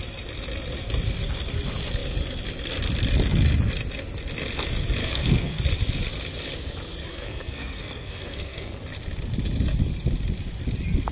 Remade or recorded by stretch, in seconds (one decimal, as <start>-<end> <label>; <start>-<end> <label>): 0.0-5.0 recorded; 5.0-5.6 remade; 5.6-7.1 recorded; 7.1-8.8 remade; 8.8-11.1 recorded